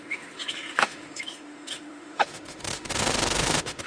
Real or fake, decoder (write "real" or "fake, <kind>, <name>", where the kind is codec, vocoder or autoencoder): fake, autoencoder, DAC-VAE